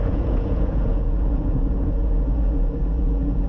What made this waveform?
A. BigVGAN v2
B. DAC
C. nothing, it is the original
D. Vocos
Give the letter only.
D